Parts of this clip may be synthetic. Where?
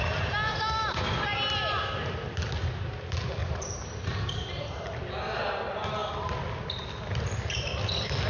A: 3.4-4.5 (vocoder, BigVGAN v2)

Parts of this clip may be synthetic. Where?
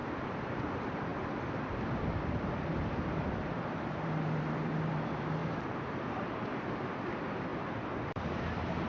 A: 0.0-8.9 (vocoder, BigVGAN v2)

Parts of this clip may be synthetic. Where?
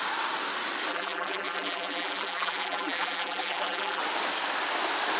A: 0.9-4.0 (vocoder, BigVGAN v2)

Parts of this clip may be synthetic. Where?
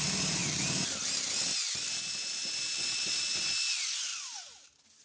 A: 0.0-0.4 (vocoder, BigVGAN v2); 1.8-4.1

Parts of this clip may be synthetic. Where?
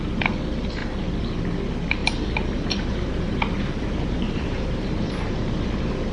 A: 2.0-5.3 (vocoder, BigVGAN v2)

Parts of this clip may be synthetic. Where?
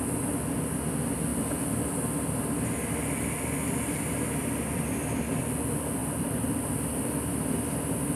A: 6.0-7.1 (vocoder, BigVGAN v2)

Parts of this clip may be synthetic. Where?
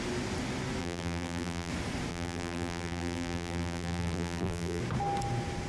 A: 0.8-1.7 (vocoder, BigVGAN v2); 2.1-4.8